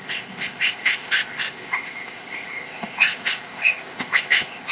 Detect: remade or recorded remade